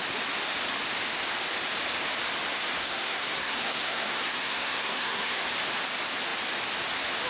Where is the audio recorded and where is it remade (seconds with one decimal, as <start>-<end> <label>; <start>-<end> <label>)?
0.0-2.8 recorded; 2.8-5.4 remade; 5.4-7.3 recorded